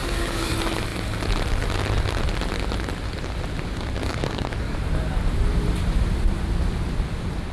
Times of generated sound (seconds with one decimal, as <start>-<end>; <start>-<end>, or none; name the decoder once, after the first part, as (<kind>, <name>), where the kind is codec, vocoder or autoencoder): 0.0-0.5 (codec, DAC); 4.0-4.8